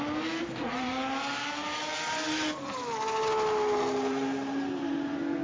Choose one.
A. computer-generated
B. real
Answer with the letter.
B